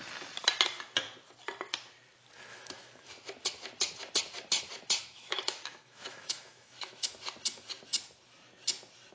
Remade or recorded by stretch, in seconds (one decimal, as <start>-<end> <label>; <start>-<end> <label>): 0.0-2.5 recorded; 2.5-3.1 remade; 3.1-5.0 recorded; 5.0-7.1 remade; 7.1-9.1 recorded